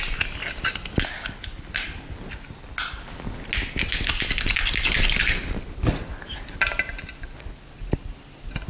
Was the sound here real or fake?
real